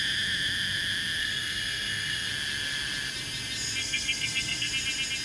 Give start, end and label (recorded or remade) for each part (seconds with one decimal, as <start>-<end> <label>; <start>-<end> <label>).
0.0-1.2 recorded; 1.2-2.3 remade; 2.3-3.8 recorded; 3.8-4.7 remade; 4.7-5.2 recorded